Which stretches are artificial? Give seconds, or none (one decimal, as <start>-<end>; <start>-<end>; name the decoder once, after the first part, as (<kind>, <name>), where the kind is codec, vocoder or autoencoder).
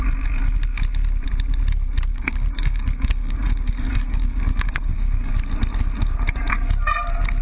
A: 2.1-5.3 (codec, DAC)